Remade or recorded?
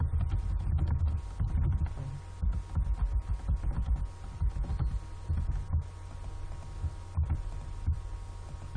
recorded